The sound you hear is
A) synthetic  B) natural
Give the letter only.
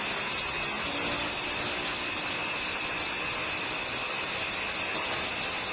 B